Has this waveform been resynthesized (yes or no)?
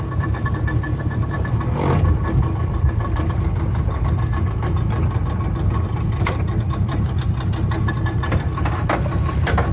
no